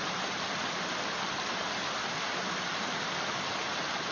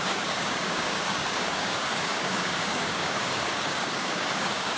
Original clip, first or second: first